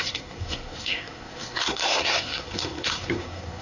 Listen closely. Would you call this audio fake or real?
fake